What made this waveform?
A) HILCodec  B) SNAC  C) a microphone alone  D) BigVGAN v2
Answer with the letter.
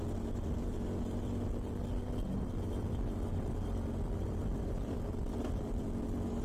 D